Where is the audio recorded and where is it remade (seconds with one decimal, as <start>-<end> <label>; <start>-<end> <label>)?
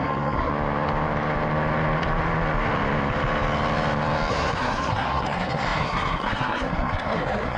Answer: 0.0-0.5 remade; 0.5-4.3 recorded; 4.3-7.6 remade